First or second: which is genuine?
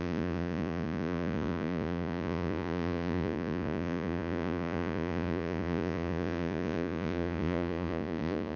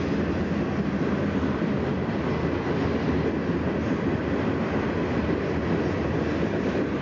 second